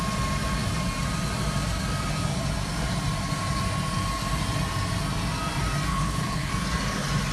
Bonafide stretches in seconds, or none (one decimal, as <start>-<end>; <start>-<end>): 0.0-5.9; 6.5-7.3